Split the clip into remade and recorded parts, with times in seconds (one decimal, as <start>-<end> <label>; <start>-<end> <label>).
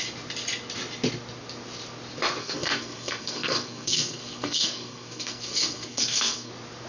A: 0.0-2.4 recorded; 2.4-6.5 remade; 6.5-6.9 recorded